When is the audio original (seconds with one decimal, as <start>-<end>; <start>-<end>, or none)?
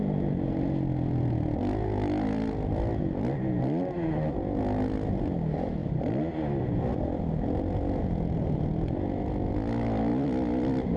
0.0-10.1